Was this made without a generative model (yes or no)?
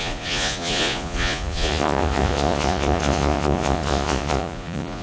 no